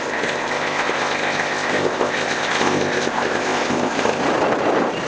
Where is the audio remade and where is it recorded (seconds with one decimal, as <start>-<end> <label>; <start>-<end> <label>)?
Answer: 0.0-4.2 remade; 4.2-5.1 recorded